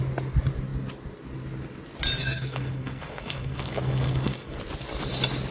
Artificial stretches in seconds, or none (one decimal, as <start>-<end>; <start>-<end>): 2.2-4.6